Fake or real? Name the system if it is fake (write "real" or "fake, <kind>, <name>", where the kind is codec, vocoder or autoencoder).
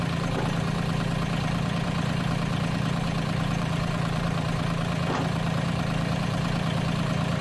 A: fake, vocoder, BigVGAN v2